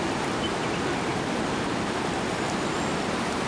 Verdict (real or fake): real